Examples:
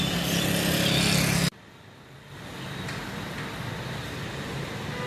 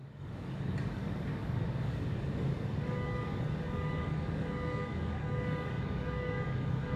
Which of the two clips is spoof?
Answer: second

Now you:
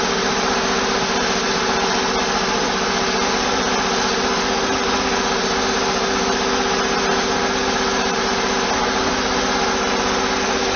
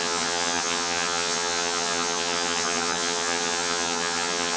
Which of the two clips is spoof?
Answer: second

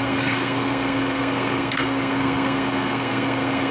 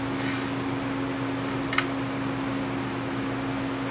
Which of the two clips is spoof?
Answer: first